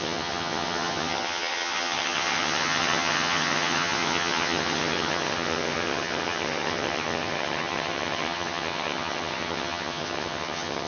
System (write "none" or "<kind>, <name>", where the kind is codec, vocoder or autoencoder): vocoder, HiFi-GAN